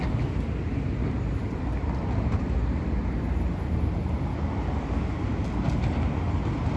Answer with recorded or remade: recorded